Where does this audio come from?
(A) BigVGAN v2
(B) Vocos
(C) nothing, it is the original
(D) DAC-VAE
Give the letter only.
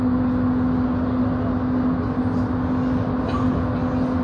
C